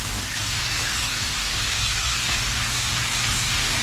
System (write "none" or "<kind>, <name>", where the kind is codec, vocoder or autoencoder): codec, DAC